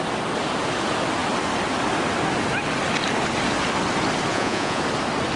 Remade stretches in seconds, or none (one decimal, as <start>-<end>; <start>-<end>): 4.3-4.8